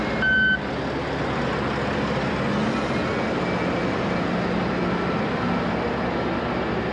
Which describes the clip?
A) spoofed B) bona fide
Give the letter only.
B